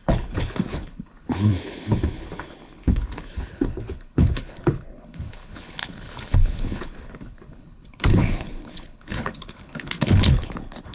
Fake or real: fake